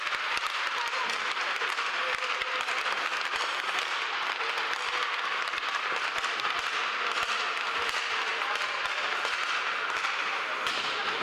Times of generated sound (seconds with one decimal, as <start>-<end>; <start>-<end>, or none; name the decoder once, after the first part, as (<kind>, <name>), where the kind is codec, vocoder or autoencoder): none